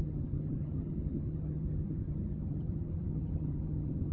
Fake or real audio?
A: fake